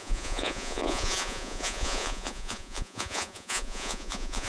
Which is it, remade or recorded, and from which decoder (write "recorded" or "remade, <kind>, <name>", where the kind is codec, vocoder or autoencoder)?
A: remade, vocoder, Vocos